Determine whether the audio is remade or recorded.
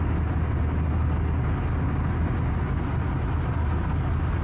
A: recorded